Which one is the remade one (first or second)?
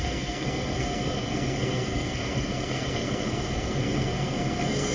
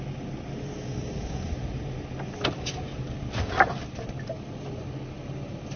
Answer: first